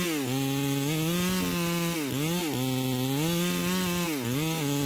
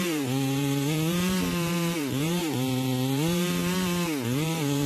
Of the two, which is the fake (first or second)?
second